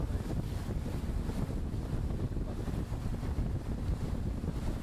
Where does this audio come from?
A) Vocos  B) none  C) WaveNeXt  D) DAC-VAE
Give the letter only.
B